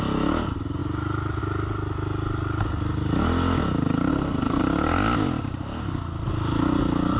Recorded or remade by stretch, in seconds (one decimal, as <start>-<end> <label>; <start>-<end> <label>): 0.0-4.1 recorded; 4.1-4.6 remade; 4.6-7.2 recorded